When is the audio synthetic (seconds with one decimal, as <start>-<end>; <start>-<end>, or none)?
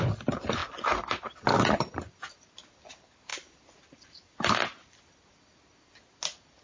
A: none